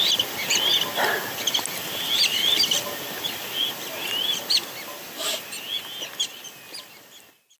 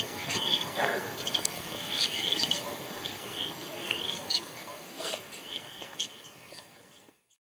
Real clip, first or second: first